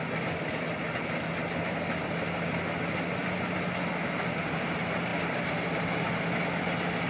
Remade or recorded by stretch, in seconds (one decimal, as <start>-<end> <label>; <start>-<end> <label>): 0.0-7.1 recorded